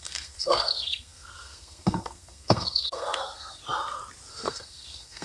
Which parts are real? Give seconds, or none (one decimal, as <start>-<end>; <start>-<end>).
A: 3.6-4.3